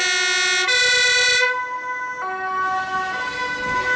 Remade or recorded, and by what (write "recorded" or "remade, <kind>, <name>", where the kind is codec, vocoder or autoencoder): recorded